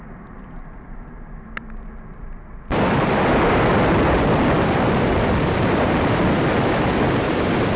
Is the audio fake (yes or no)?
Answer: yes